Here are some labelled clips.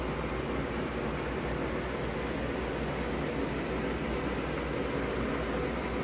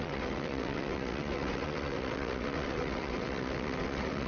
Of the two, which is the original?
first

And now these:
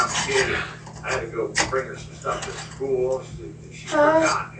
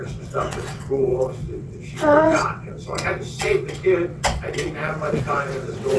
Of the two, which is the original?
first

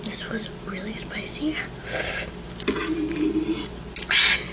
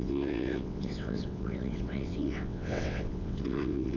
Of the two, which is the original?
first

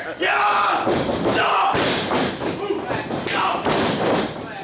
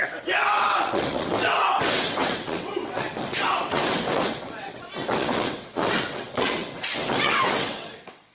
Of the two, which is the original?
first